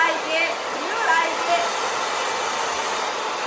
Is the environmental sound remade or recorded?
recorded